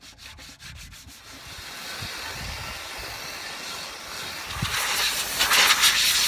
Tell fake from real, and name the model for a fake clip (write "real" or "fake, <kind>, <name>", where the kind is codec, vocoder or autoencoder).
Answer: real